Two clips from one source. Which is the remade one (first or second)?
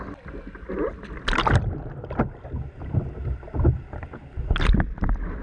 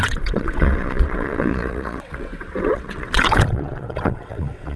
second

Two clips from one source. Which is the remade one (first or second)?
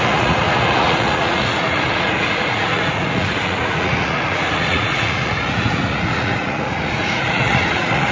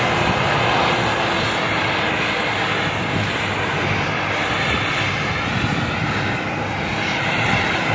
first